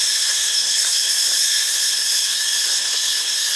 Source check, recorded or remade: remade